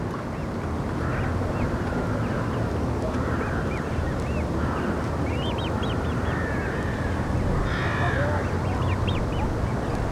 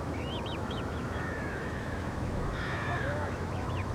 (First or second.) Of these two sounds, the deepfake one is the second